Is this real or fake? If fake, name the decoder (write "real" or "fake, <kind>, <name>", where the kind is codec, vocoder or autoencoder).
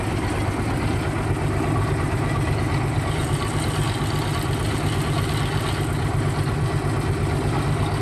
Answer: real